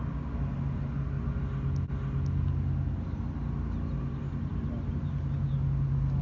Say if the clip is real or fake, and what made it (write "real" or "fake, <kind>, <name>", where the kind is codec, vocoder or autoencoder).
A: real